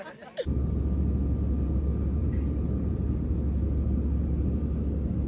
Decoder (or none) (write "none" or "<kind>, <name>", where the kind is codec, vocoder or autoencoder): none